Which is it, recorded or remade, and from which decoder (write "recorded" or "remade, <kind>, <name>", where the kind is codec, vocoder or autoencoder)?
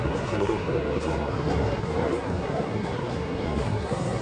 remade, codec, SNAC